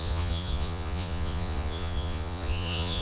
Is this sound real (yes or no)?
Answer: no